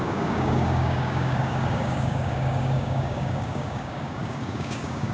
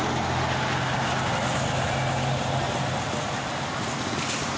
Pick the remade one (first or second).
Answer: first